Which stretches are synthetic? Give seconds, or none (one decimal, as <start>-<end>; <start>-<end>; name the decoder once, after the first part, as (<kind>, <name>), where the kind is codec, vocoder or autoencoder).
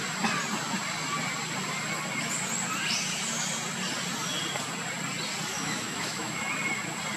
5.5-6.4 (autoencoder, DAC-VAE)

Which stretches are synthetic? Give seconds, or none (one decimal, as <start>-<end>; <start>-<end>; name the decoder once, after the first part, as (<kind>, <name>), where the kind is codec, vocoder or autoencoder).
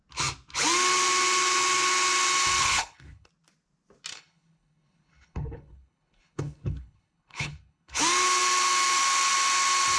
2.6-3.3 (codec, HILCodec); 4.1-8.0